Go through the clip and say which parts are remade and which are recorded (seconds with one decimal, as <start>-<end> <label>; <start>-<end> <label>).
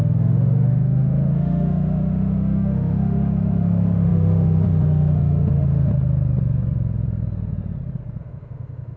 0.0-5.9 remade; 5.9-8.2 recorded; 8.2-9.0 remade